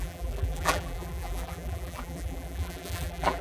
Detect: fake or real fake